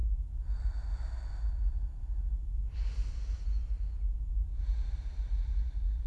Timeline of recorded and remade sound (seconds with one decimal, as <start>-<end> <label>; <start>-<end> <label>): 0.0-6.1 recorded